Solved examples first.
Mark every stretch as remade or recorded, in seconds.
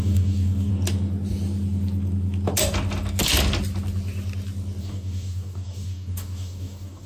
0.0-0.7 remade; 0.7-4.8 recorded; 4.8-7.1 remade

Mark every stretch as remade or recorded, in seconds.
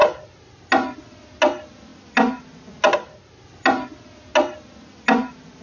0.0-5.6 recorded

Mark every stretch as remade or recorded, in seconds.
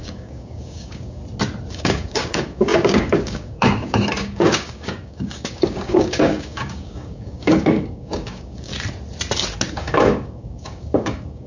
0.0-1.2 remade; 1.2-1.7 recorded; 1.7-8.7 remade; 8.7-9.7 recorded; 9.7-11.5 remade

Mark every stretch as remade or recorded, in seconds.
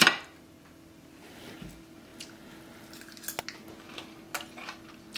0.0-5.2 recorded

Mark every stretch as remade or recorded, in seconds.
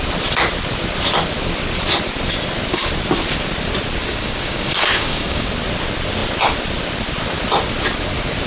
0.0-4.0 recorded; 4.0-5.5 remade; 5.5-8.5 recorded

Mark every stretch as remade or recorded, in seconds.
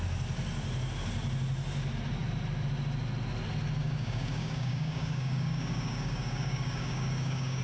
0.0-3.8 recorded; 3.8-7.6 remade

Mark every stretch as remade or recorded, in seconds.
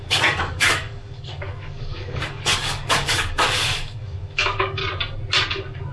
0.0-4.8 remade; 4.8-5.5 recorded; 5.5-5.9 remade